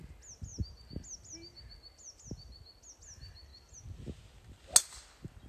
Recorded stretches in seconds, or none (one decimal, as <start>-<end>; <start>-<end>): 0.0-5.5